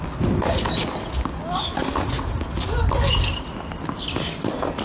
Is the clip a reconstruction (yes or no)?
no